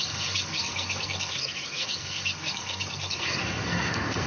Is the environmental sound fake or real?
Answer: fake